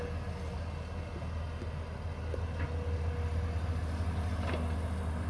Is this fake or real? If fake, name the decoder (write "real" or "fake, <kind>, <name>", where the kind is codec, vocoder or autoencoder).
real